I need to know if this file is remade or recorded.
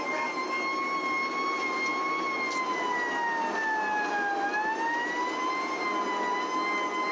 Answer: recorded